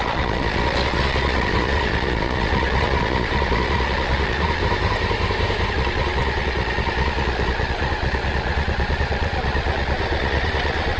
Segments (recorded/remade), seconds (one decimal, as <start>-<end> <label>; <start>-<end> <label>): 0.0-4.6 remade; 4.6-5.7 recorded; 5.7-11.0 remade